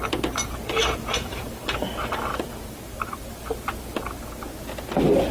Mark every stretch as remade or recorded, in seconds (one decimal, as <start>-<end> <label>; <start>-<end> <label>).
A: 0.0-1.1 recorded; 1.1-1.9 remade; 1.9-2.3 recorded; 2.3-3.3 remade; 3.3-5.3 recorded